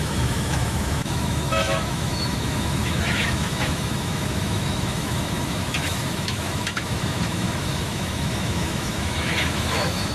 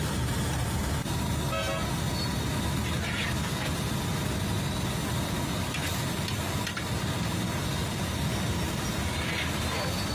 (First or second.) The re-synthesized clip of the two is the first